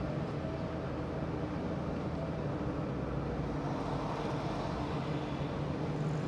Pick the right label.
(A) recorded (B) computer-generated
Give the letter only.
A